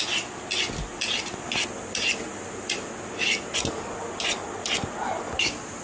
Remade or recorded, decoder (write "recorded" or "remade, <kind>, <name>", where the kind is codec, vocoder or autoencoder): recorded